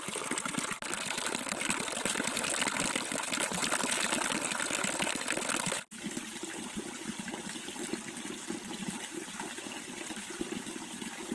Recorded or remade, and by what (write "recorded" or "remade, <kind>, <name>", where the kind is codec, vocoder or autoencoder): recorded